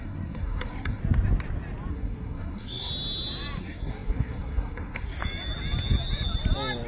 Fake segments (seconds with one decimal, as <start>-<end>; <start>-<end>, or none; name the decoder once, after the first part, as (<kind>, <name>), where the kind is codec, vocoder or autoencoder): 0.0-1.0 (codec, SNAC); 1.9-2.9; 3.6-5.2